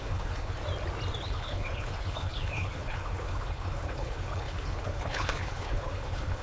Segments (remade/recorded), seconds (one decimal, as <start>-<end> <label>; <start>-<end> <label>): 0.0-0.6 remade; 0.6-1.2 recorded; 1.2-6.4 remade